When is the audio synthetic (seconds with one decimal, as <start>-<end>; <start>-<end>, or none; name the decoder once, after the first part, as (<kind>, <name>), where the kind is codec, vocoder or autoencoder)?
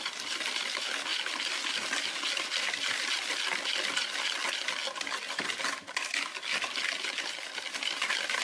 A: none